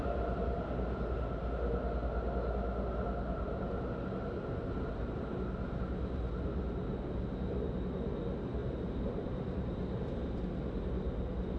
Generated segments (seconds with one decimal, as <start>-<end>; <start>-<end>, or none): 8.6-10.4